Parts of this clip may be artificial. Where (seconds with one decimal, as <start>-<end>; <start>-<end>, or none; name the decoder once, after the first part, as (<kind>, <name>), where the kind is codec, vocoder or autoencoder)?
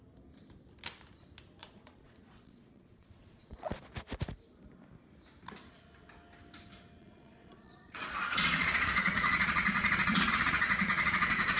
1.6-3.8 (vocoder, Vocos); 7.0-11.6